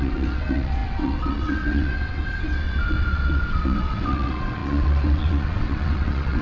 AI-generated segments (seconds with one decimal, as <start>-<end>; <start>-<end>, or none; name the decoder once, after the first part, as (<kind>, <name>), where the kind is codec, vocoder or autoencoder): 0.0-6.4 (vocoder, WaveNeXt)